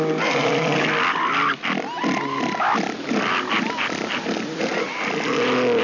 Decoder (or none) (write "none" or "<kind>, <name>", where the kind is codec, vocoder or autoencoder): none